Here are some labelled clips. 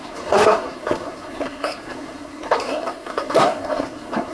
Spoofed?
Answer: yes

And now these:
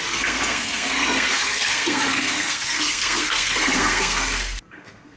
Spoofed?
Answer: yes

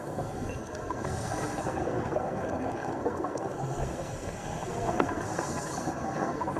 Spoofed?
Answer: yes